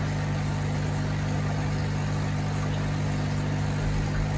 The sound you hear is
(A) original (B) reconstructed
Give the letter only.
A